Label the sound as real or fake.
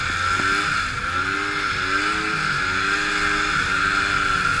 real